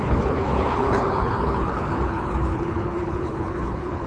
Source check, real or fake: fake